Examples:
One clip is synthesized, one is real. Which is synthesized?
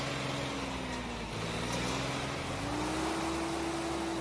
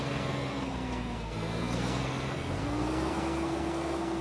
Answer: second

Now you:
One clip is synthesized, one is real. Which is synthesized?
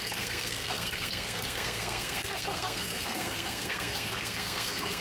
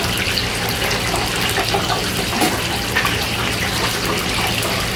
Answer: first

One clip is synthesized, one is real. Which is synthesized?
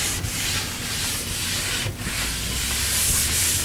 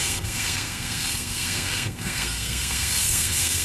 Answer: second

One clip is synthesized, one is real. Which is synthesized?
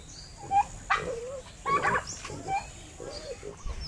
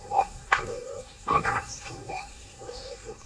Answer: second